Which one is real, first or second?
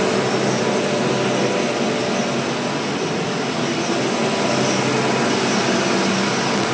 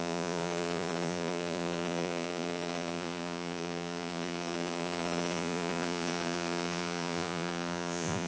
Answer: first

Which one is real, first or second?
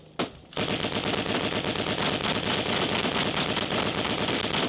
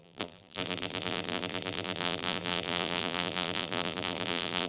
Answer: first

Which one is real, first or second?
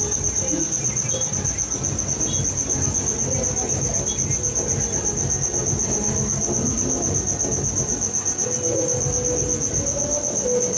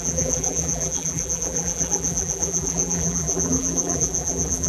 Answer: first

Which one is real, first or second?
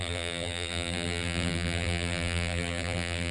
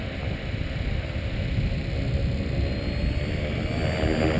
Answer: second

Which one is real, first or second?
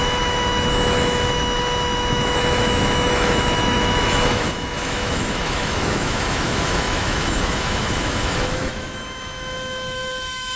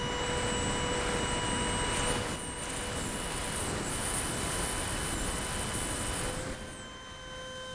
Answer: second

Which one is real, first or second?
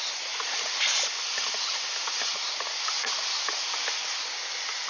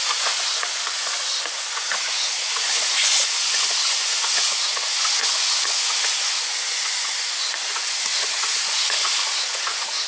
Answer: first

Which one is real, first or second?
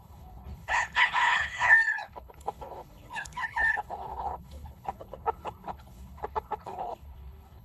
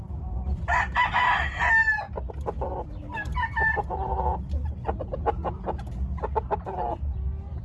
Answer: second